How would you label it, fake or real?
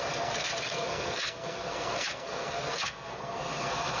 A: fake